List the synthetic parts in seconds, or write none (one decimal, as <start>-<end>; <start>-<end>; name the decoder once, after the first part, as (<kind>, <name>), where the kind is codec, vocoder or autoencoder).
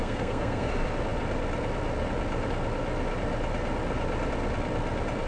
0.0-0.7 (codec, SNAC)